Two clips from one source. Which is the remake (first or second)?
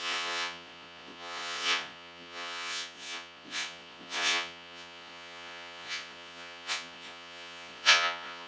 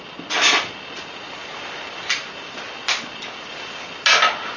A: first